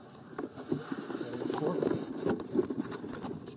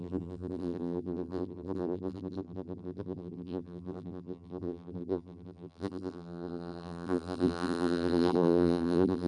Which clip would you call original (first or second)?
first